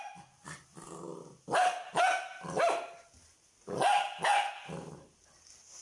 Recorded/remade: recorded